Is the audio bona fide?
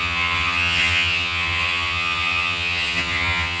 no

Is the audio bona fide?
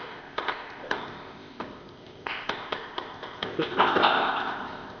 no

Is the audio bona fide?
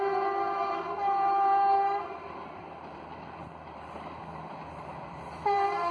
no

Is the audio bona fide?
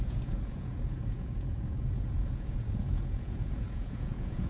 no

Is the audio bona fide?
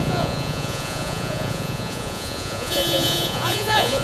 no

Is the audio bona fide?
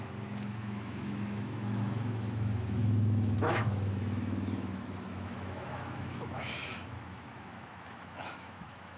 no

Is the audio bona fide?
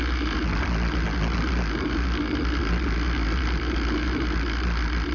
yes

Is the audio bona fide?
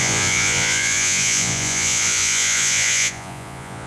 no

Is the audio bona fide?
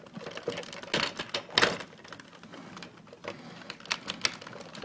yes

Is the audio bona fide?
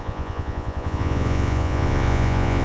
no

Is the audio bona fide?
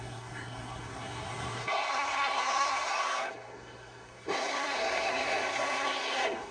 no